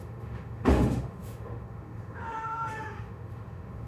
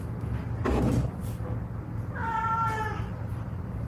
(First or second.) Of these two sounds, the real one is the second